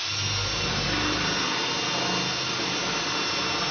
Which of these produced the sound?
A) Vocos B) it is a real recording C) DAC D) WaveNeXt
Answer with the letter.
B